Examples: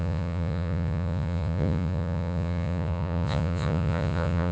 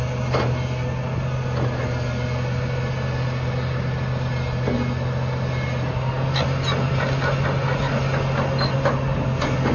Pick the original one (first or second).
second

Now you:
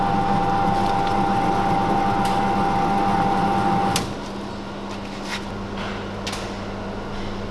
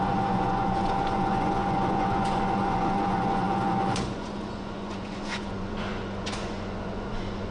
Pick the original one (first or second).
first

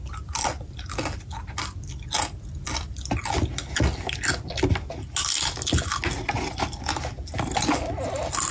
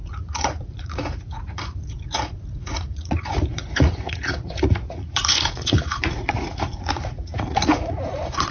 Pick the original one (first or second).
first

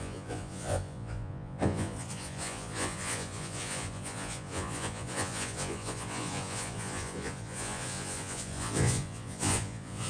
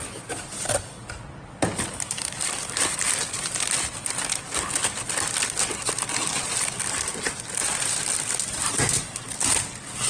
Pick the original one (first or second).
second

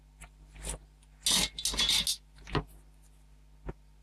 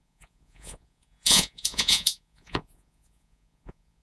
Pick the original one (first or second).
first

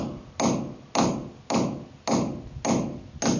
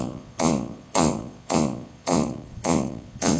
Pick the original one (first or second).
first